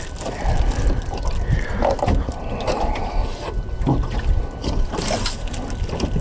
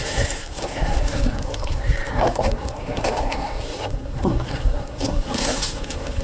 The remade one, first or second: second